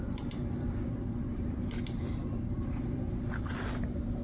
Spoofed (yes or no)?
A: yes